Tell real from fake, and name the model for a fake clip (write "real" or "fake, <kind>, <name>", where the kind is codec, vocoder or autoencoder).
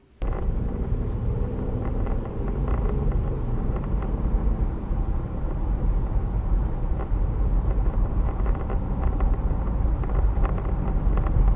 fake, vocoder, BigVGAN v2